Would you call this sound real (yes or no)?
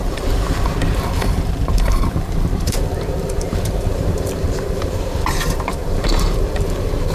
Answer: no